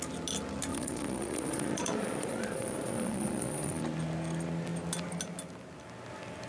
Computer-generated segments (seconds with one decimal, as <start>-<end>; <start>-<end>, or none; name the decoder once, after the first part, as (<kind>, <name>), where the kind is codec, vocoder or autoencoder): 0.7-3.8 (vocoder, Vocos)